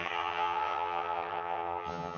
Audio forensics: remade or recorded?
remade